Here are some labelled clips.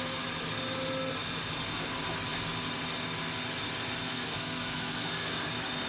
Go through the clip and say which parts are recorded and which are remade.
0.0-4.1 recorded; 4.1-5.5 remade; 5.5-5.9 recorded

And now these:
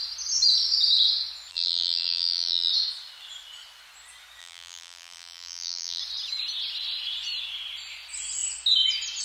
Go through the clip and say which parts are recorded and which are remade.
0.0-1.5 recorded; 1.5-2.7 remade; 2.7-4.4 recorded; 4.4-6.0 remade; 6.0-9.2 recorded